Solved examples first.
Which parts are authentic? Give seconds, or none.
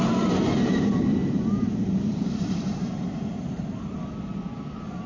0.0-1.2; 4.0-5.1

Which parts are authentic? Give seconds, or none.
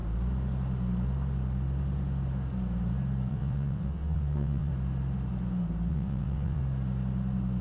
0.0-3.3; 4.7-5.9; 6.6-7.6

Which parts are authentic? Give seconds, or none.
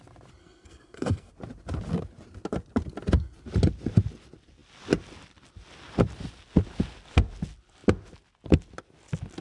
0.0-0.4; 1.3-9.4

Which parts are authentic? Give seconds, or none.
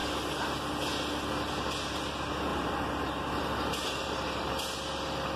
0.0-2.5; 4.5-5.4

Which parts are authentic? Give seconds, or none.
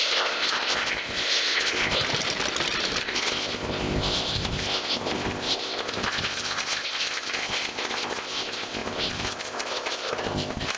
2.0-3.0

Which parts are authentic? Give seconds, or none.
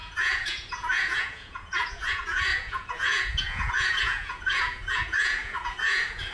none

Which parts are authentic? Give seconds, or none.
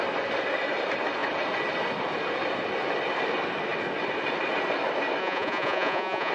0.0-5.2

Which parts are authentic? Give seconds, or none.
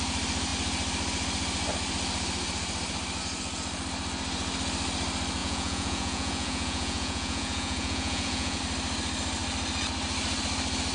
0.0-5.4; 8.6-10.9